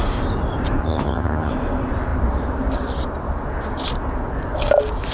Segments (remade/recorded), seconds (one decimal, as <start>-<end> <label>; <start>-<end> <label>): 0.0-0.8 recorded; 0.8-1.5 remade; 1.5-5.1 recorded